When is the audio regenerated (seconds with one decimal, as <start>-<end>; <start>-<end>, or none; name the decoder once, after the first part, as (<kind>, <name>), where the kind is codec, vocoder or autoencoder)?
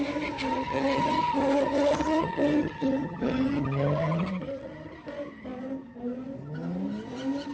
0.5-4.9 (vocoder, HiFi-GAN)